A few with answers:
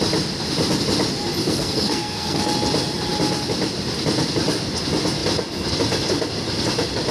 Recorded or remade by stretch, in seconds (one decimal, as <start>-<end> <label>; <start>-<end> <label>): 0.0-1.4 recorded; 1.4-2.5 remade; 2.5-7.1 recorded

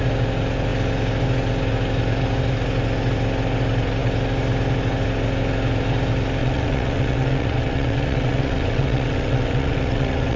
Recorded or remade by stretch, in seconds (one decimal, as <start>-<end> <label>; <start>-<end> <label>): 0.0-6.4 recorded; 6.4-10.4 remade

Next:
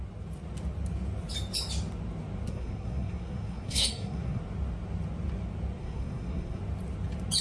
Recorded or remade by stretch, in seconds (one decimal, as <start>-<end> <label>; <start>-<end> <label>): 0.0-2.5 recorded; 2.5-4.4 remade; 4.4-5.8 recorded; 5.8-6.6 remade; 6.6-7.4 recorded